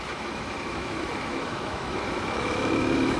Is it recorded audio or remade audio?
remade